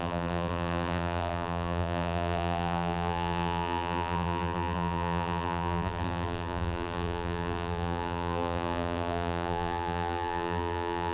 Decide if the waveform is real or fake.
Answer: fake